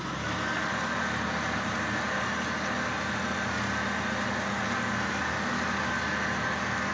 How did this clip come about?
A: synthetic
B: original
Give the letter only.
B